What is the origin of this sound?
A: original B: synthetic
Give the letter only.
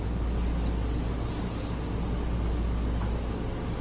A